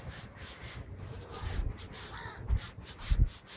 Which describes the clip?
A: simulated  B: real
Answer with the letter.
A